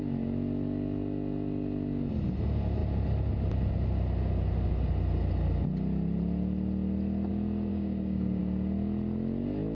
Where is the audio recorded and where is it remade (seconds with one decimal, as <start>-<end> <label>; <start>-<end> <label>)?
0.0-7.7 recorded; 7.7-8.4 remade; 8.4-9.7 recorded